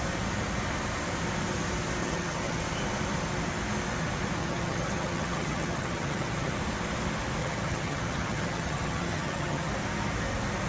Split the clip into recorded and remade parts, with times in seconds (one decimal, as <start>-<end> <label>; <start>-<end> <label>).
0.0-2.0 recorded; 2.0-2.6 remade; 2.6-4.4 recorded; 4.4-6.5 remade; 6.5-7.4 recorded; 7.4-9.7 remade; 9.7-10.7 recorded